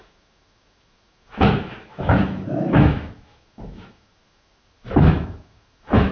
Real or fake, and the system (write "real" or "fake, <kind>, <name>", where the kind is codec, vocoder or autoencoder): fake, autoencoder, DAC-VAE